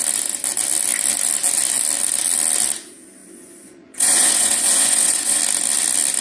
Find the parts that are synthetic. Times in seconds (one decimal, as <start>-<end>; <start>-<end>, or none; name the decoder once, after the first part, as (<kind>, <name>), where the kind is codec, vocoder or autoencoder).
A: 3.2-5.4 (vocoder, Vocos)